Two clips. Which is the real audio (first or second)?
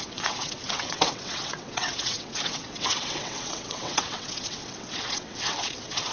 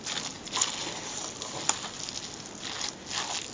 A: second